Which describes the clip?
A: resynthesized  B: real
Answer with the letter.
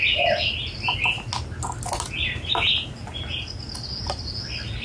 B